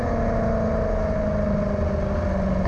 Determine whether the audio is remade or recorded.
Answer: recorded